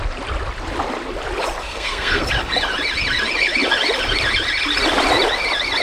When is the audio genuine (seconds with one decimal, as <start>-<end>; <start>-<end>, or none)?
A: 0.0-1.6; 2.2-5.8